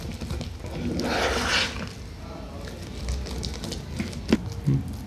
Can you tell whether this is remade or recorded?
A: recorded